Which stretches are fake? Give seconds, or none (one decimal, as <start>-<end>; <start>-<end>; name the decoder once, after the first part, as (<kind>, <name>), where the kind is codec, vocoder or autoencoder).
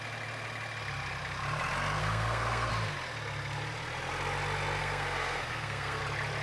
2.0-2.7 (codec, SNAC); 4.8-6.0